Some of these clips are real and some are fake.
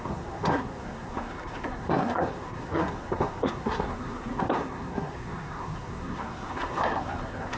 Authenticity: fake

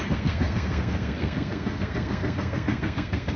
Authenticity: fake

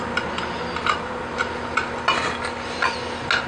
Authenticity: real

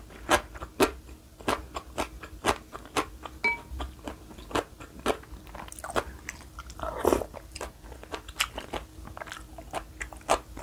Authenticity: real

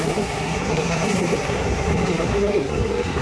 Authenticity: fake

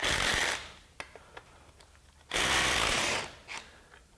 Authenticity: real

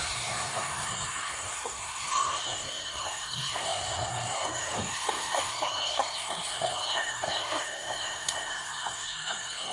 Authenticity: fake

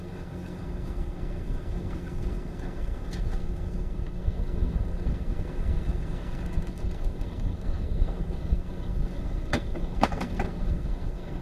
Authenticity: fake